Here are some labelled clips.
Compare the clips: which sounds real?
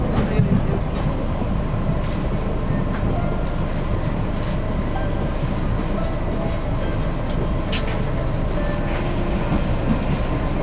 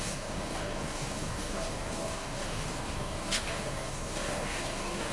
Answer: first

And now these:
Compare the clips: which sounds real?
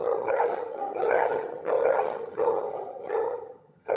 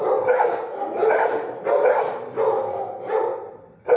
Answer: second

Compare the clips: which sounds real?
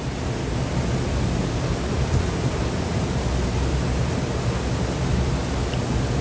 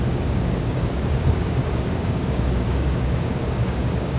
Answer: first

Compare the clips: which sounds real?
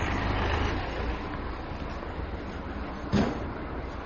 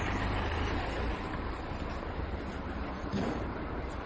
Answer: first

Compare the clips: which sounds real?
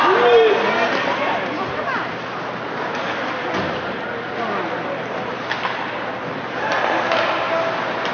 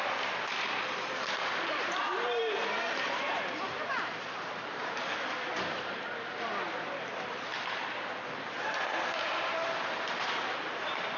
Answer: first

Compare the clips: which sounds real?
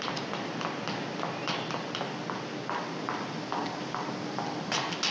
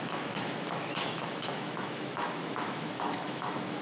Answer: first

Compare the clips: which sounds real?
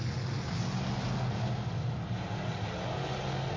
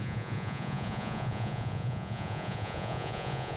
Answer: first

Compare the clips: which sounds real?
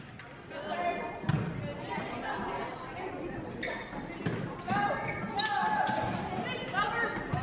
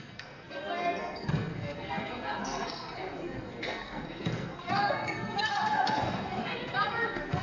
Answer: first